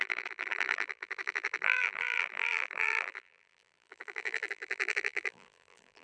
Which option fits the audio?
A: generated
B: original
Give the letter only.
A